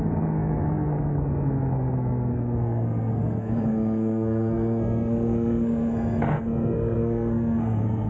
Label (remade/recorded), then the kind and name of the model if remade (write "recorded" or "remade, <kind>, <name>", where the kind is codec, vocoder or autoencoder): remade, codec, SNAC